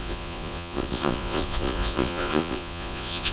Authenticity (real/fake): fake